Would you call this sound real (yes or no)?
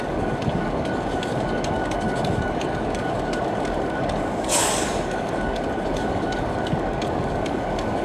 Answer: no